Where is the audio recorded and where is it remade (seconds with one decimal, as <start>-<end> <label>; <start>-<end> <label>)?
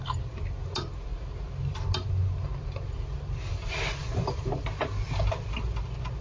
0.0-6.2 recorded